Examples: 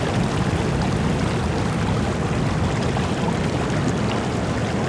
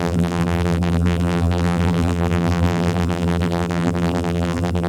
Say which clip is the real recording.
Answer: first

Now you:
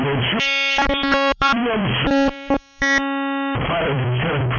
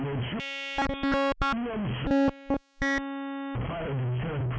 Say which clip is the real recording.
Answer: second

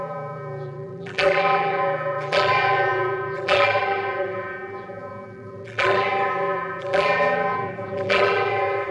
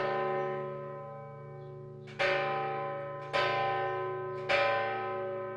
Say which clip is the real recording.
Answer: second